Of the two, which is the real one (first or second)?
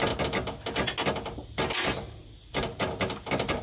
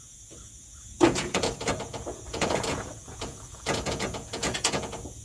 first